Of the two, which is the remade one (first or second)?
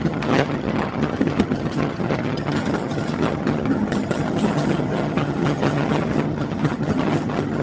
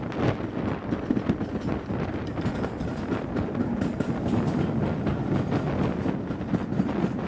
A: first